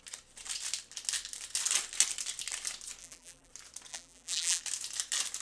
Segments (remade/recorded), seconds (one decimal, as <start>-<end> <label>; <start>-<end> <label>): 0.0-3.0 recorded; 3.0-3.5 remade; 3.5-3.9 recorded; 3.9-4.6 remade; 4.6-5.4 recorded